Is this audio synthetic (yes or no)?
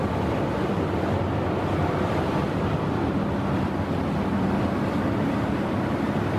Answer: yes